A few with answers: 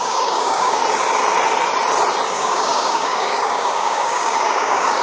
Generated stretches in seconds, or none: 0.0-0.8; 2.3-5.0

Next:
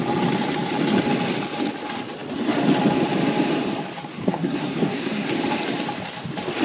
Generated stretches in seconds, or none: 4.3-5.3

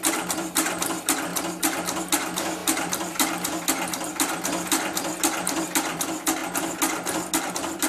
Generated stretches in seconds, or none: 0.0-1.3; 2.0-6.4; 7.5-7.9

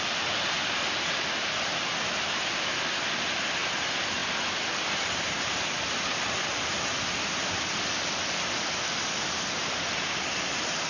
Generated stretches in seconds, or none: none

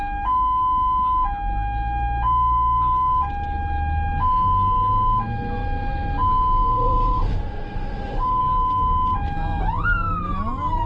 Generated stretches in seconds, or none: 6.7-8.4

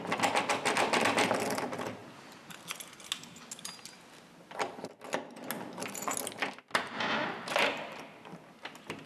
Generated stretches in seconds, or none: none

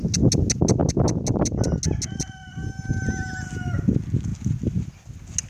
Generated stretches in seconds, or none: none